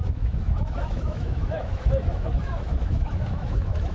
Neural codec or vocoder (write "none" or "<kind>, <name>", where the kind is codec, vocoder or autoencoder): autoencoder, DAC-VAE